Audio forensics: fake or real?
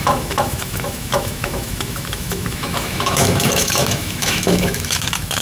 fake